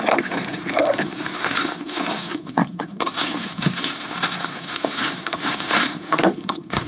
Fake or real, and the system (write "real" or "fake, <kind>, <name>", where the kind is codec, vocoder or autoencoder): fake, codec, SNAC